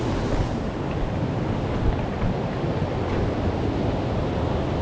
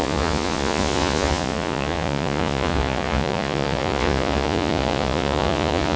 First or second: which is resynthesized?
second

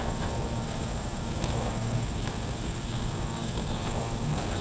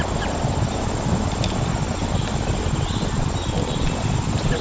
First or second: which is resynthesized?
first